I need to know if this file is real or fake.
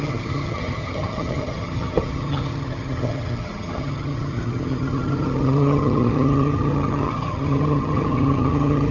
fake